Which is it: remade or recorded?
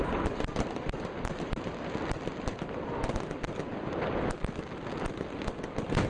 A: recorded